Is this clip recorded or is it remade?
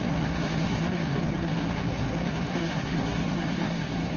remade